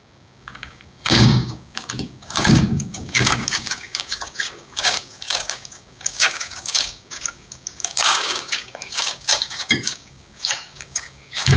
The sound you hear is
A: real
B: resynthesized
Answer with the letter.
B